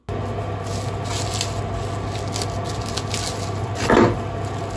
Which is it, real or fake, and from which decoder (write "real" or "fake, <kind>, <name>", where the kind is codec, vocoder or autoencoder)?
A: real